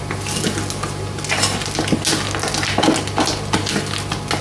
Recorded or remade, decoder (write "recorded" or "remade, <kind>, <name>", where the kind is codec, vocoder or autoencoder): recorded